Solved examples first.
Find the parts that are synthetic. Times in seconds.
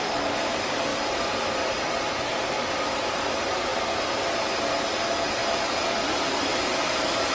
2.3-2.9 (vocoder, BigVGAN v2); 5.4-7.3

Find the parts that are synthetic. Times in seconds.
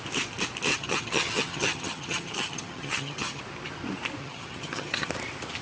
0.7-3.4 (vocoder, HiFi-GAN); 4.2-5.1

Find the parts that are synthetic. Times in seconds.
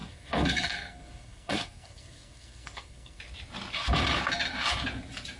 0.0-3.2 (codec, SNAC)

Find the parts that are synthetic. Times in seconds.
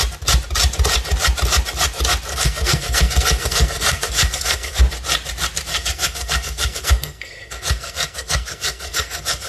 2.3-4.8 (codec, SNAC); 5.7-9.5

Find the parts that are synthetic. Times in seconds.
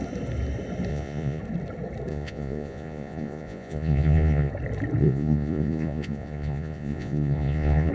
0.9-1.4 (vocoder, Vocos); 2.1-4.5; 5.0-7.9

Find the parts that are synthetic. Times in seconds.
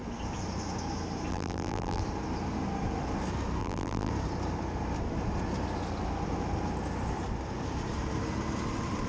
1.3-2.0 (vocoder, BigVGAN v2); 3.6-4.1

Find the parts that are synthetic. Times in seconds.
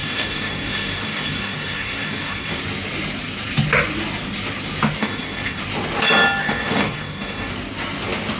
0.0-2.6 (codec, DAC); 5.0-5.6; 6.4-7.5